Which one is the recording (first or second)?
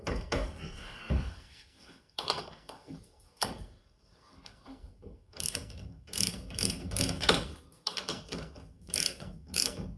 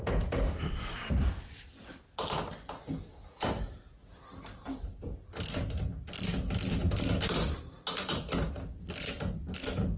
second